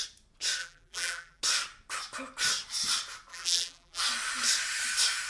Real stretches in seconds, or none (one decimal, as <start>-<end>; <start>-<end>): 0.0-0.6; 1.4-3.3; 4.0-5.3